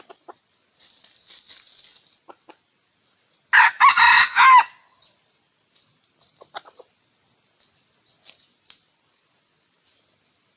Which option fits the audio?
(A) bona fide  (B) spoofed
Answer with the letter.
A